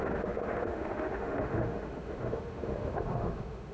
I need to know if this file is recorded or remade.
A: remade